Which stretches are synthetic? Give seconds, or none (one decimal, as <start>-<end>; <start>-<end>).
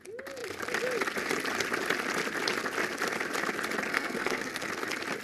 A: 3.9-4.7